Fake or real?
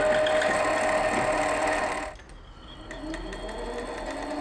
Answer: real